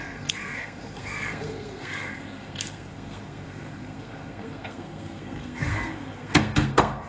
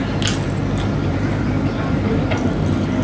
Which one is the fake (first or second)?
first